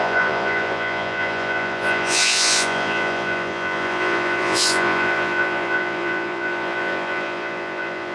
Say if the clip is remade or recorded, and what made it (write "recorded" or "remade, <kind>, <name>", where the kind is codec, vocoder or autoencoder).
remade, vocoder, Vocos